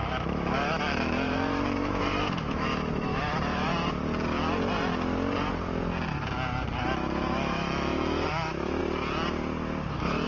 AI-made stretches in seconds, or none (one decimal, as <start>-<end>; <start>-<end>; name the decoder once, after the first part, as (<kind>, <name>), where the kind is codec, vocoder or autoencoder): 0.0-3.7 (autoencoder, DAC-VAE); 6.8-8.8; 9.9-10.3